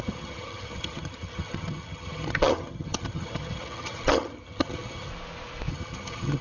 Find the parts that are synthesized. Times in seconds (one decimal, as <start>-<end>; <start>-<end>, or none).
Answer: 0.0-5.1; 5.7-6.4